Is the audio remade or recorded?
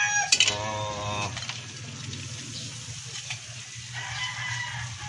recorded